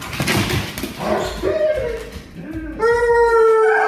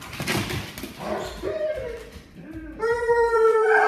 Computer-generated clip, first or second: second